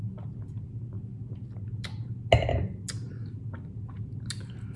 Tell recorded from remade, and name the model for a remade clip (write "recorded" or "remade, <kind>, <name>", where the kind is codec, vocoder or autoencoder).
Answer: recorded